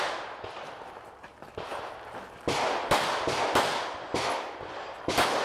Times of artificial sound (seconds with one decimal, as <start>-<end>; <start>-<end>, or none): none